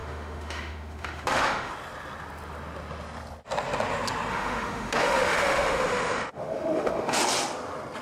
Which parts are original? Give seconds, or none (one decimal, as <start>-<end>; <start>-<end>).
1.7-4.3; 7.2-8.0

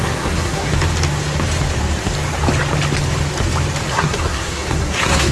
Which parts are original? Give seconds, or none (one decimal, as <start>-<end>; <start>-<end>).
0.7-3.9

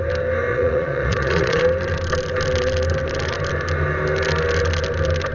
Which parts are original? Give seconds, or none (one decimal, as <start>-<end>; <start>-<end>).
0.0-0.5; 1.6-5.3

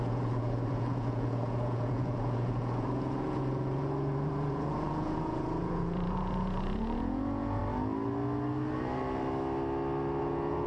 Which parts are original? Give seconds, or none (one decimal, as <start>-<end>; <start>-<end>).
7.6-10.2

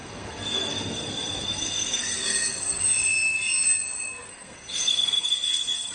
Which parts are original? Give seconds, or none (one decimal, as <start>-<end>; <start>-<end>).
2.8-4.3

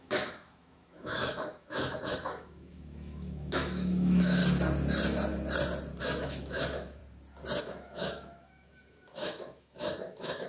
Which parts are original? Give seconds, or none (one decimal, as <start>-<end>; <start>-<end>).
4.4-6.0; 7.0-7.6